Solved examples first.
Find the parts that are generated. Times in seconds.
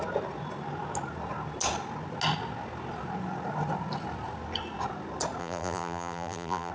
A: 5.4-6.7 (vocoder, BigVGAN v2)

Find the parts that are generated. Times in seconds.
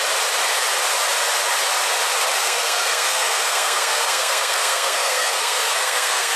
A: 2.3-6.4 (codec, SNAC)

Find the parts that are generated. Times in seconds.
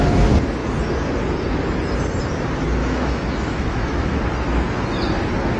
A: 2.8-4.2 (autoencoder, DAC-VAE)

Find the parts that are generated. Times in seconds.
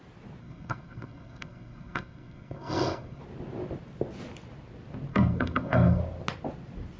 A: 0.4-3.2 (codec, SNAC); 5.1-6.0